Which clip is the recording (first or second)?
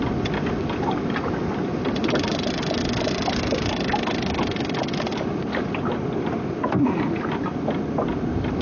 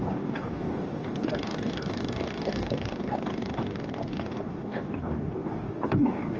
first